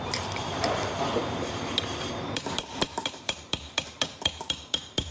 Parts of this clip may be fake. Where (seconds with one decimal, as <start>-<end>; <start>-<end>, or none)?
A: 0.0-5.1